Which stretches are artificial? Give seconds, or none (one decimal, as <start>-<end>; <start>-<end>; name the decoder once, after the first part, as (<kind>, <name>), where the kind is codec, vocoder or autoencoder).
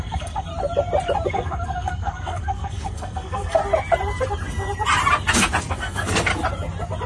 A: 0.0-0.5 (codec, SNAC); 1.3-3.6; 5.7-6.3